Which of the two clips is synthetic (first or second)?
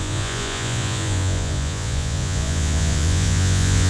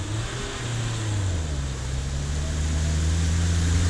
first